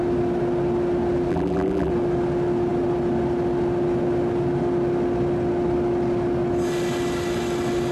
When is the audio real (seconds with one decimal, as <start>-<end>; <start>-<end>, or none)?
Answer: 0.0-1.3; 1.9-7.9